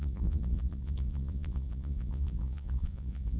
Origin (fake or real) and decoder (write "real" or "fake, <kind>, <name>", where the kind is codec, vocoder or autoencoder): fake, vocoder, Vocos